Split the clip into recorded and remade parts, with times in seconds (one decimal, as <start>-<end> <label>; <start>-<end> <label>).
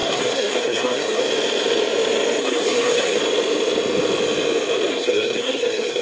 0.0-1.2 remade; 1.2-2.4 recorded; 2.4-3.2 remade; 3.2-4.9 recorded; 4.9-6.0 remade